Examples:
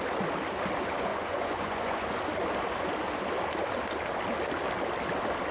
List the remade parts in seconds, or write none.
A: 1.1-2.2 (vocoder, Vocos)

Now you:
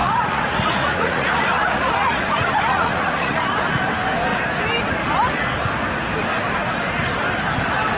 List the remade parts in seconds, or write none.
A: 0.0-3.8 (vocoder, Vocos)

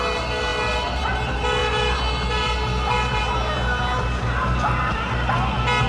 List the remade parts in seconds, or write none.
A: none